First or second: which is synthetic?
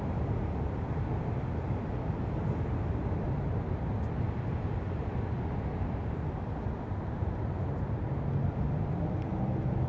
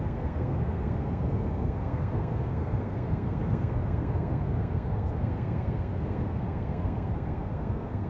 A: second